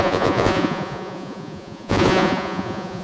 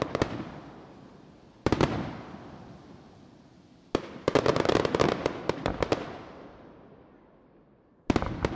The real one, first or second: second